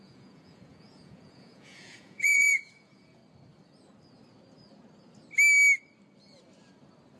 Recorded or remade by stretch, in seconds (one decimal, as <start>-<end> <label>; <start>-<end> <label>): 0.0-3.2 remade; 3.2-7.2 recorded